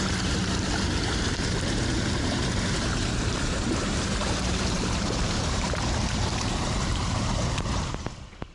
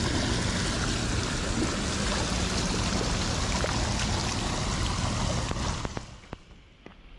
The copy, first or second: first